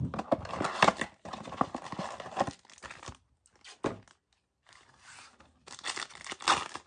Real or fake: real